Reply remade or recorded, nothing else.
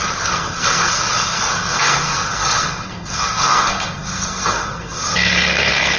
remade